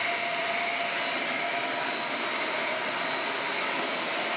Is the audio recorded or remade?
recorded